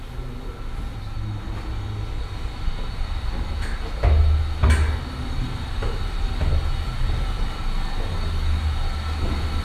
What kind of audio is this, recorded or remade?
recorded